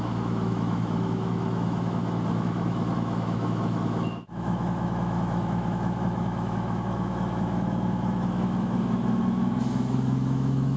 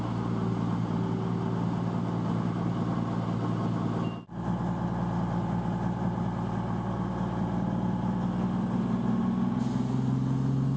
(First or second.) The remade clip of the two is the first